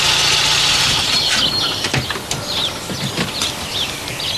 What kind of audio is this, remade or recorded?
recorded